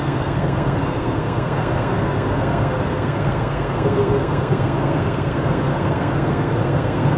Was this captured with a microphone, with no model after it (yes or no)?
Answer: no